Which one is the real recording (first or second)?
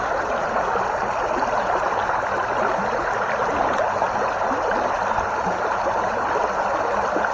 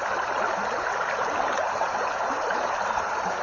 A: first